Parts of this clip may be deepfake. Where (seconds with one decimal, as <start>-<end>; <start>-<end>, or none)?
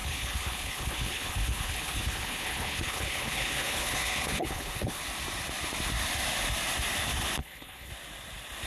0.0-5.0; 7.4-7.9